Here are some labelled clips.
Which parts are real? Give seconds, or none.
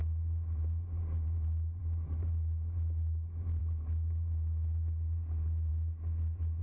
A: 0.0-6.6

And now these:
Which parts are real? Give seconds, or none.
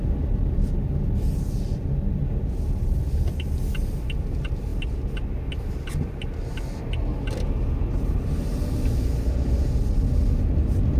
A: 0.0-11.0